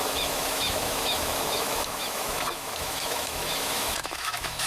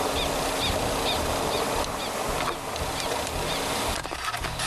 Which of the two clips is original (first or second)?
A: second